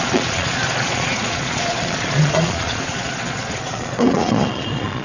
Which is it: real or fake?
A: fake